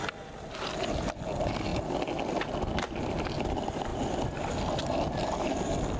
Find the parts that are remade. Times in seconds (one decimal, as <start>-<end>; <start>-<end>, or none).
none